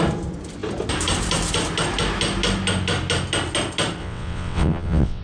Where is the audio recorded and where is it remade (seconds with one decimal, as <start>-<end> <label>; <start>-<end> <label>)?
0.0-4.0 recorded; 4.0-5.2 remade